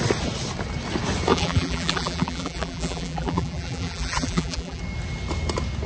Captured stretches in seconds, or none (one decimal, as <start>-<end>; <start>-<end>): 0.0-1.3; 4.8-5.9